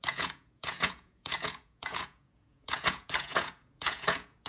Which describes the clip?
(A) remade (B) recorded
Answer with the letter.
A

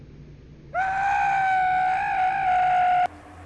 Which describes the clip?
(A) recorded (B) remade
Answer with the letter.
A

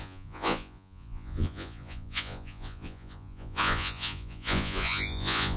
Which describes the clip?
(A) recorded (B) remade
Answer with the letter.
B